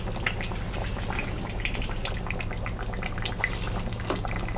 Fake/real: real